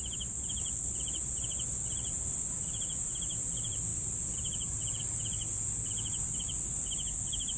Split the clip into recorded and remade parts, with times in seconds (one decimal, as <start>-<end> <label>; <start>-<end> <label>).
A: 0.0-7.6 recorded